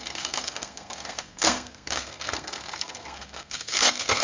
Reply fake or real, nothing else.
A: fake